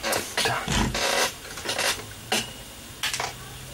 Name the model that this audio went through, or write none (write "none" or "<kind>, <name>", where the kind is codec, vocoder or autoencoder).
none